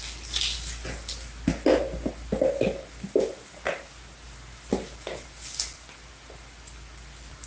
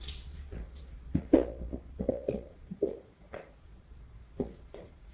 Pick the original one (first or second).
first